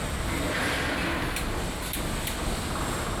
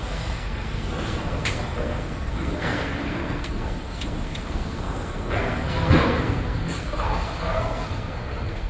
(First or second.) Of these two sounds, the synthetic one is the second